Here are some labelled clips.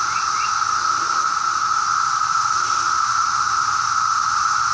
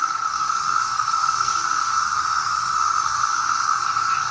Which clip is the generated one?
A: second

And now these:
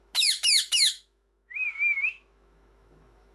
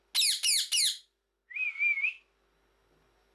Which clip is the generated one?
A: first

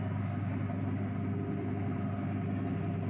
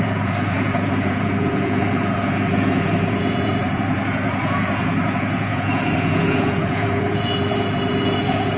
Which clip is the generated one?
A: second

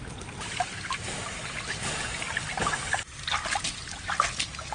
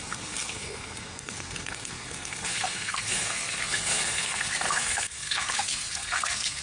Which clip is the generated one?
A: second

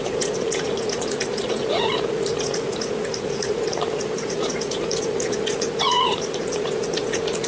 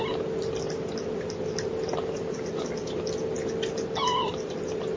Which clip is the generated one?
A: first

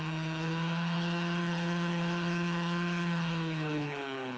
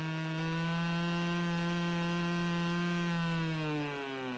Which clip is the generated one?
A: first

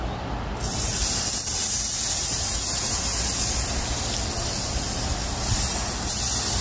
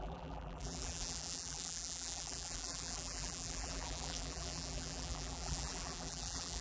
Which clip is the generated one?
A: second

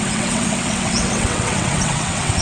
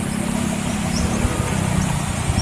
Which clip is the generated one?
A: first